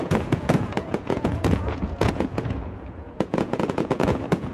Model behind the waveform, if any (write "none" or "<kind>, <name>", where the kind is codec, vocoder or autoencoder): vocoder, Vocos